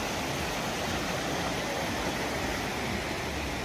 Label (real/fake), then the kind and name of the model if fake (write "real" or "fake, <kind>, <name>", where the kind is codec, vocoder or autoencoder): real